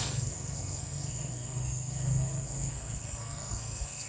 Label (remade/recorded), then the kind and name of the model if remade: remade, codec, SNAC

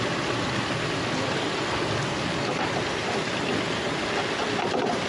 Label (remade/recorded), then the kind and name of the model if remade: recorded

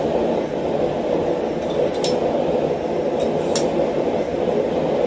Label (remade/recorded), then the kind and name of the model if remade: recorded